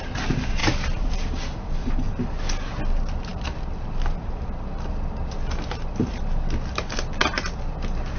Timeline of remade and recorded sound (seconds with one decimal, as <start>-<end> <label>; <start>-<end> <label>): 0.0-0.6 recorded; 0.6-2.3 remade; 2.3-8.2 recorded